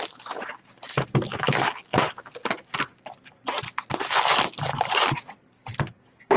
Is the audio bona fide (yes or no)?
yes